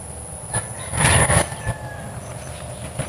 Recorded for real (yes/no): yes